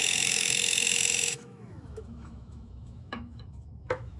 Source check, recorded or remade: remade